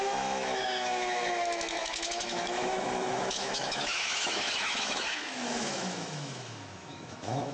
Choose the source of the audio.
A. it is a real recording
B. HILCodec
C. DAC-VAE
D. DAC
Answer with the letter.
C